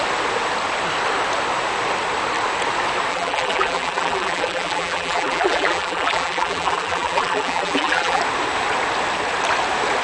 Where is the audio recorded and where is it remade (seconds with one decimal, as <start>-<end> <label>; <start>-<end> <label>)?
0.0-3.1 recorded; 3.1-8.2 remade; 8.2-10.0 recorded